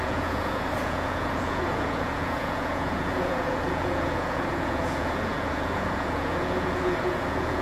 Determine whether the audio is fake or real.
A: fake